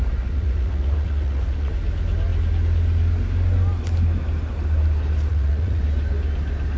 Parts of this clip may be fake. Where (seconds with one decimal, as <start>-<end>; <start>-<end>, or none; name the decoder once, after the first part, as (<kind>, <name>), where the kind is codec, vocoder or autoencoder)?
0.0-1.7 (vocoder, Vocos); 5.3-5.8